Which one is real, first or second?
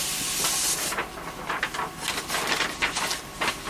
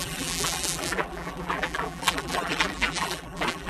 first